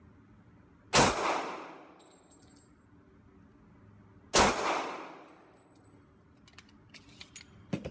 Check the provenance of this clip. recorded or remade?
recorded